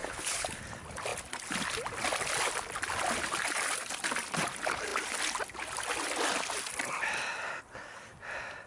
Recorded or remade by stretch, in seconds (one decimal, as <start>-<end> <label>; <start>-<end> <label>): 0.0-0.6 remade; 0.6-8.7 recorded